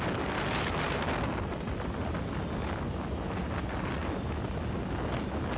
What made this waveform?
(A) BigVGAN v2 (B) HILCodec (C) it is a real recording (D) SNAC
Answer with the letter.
C